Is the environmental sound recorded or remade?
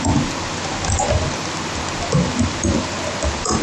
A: recorded